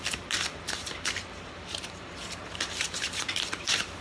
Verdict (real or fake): fake